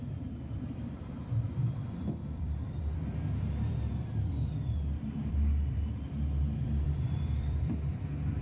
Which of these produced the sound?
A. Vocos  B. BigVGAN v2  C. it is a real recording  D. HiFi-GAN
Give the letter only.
B